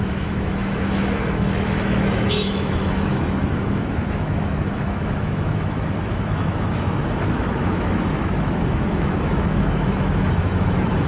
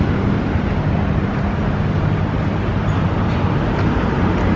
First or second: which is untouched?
second